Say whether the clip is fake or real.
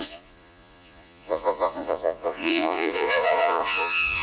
fake